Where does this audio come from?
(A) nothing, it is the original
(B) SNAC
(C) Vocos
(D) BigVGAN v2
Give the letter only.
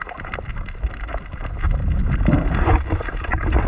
A